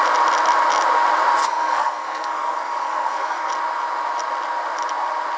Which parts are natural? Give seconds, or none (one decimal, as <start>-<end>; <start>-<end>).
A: 0.0-1.4; 3.5-5.4